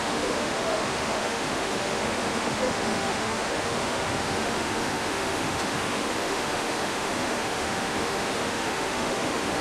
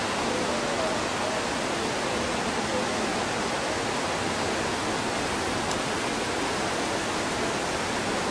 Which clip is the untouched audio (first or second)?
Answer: second